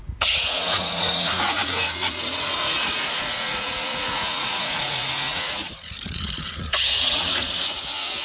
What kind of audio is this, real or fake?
fake